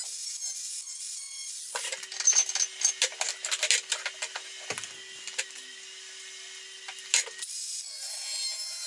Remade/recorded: recorded